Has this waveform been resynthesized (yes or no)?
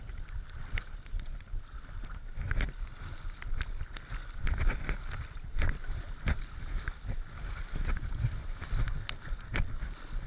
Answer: no